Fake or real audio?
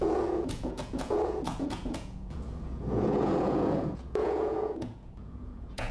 fake